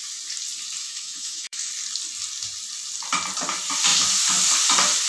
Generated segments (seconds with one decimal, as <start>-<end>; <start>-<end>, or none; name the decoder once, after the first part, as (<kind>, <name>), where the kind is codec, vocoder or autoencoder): 0.8-1.7 (autoencoder, DAC-VAE)